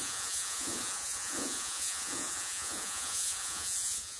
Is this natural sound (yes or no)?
no